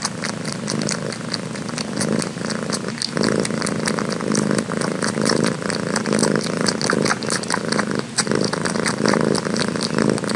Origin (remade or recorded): recorded